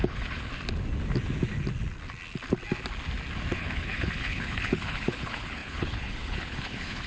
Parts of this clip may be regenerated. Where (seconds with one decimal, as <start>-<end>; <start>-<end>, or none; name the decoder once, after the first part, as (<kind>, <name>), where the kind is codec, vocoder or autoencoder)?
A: 0.0-0.5 (codec, HILCodec); 3.6-7.1